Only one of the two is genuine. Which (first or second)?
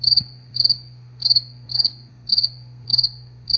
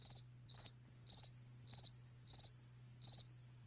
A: second